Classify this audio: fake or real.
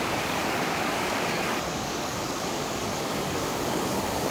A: fake